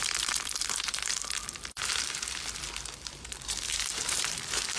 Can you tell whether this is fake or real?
fake